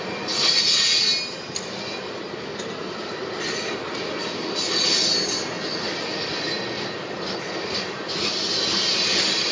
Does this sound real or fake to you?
real